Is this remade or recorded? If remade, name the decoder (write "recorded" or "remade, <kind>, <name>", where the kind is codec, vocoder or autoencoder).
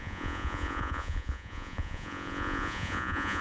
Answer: remade, vocoder, Vocos